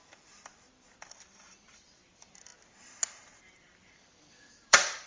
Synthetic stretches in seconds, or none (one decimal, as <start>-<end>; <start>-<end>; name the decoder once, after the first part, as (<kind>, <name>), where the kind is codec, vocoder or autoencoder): 0.0-2.5 (vocoder, BigVGAN v2); 3.4-5.1